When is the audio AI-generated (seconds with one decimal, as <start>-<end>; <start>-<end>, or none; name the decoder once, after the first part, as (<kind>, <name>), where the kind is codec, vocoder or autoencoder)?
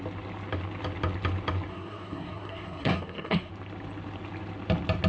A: 1.7-3.5 (codec, SNAC)